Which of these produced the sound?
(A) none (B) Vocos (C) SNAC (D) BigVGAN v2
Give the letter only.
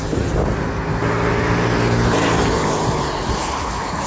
A